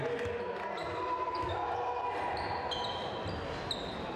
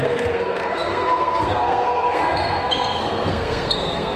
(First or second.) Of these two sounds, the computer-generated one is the second